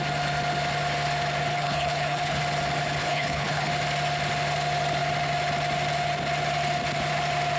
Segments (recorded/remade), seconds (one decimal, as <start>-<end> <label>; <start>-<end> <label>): 0.0-1.5 recorded; 1.5-2.4 remade; 2.4-3.0 recorded; 3.0-3.7 remade; 3.7-7.6 recorded